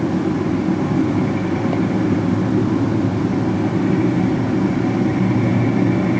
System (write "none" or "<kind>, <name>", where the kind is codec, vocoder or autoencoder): none